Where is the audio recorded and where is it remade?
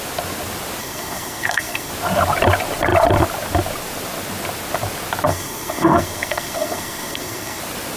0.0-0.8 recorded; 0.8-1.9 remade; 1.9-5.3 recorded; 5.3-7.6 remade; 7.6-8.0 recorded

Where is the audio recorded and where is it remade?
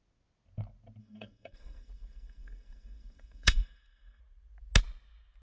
0.0-1.0 recorded; 1.0-4.2 remade; 4.2-5.4 recorded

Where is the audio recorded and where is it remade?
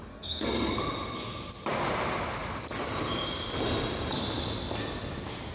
0.0-0.7 remade; 0.7-5.5 recorded